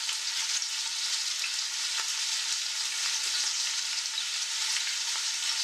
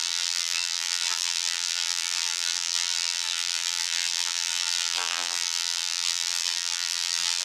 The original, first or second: first